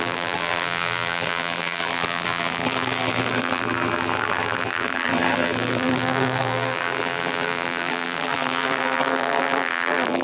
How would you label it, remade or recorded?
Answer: remade